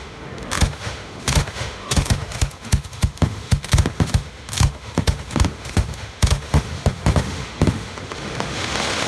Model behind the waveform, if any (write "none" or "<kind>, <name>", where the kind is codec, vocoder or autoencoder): autoencoder, DAC-VAE